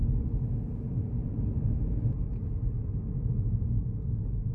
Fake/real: real